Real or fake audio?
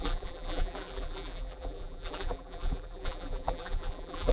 fake